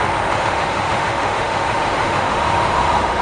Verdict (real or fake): fake